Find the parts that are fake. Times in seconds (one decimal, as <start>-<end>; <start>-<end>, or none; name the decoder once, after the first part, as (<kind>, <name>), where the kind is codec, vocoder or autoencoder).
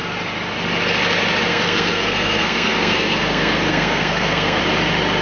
1.5-4.6 (codec, SNAC)